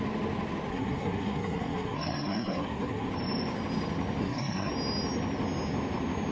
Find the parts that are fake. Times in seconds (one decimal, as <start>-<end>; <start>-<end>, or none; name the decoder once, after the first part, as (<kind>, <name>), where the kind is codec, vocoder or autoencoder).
0.7-3.1 (codec, SNAC); 4.2-4.7